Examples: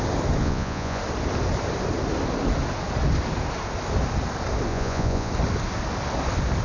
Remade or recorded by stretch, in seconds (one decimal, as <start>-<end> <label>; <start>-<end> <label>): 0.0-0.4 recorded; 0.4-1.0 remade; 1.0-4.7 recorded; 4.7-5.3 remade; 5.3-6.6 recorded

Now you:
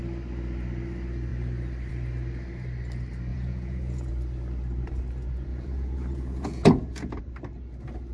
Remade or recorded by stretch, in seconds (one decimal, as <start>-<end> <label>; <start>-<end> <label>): 0.0-3.3 recorded; 3.3-4.1 remade; 4.1-5.5 recorded; 5.5-7.2 remade; 7.2-8.1 recorded

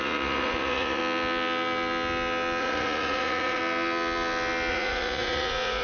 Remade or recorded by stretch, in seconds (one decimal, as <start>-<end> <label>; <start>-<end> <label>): 0.0-1.0 remade; 1.0-2.6 recorded; 2.6-3.6 remade; 3.6-4.7 recorded; 4.7-5.8 remade

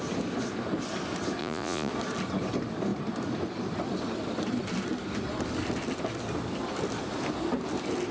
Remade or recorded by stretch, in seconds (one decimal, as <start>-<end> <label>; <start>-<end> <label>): 0.0-1.4 recorded; 1.4-1.9 remade; 1.9-8.1 recorded

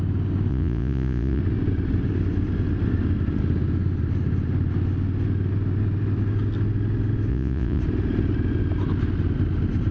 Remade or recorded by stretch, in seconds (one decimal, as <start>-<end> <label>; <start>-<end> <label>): 0.0-0.5 recorded; 0.5-1.4 remade; 1.4-7.3 recorded; 7.3-7.8 remade; 7.8-9.9 recorded

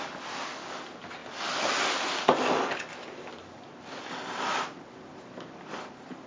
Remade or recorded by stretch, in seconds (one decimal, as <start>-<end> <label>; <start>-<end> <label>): 0.0-6.3 recorded

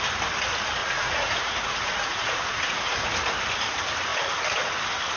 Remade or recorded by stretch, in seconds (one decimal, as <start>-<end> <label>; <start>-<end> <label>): 0.0-0.8 recorded; 0.8-3.1 remade; 3.1-5.2 recorded